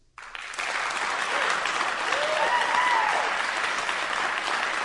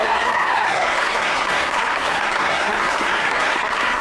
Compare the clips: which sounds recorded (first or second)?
first